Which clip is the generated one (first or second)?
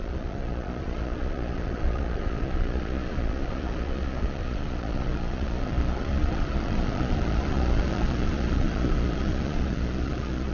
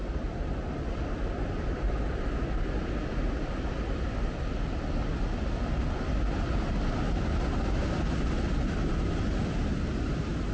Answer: first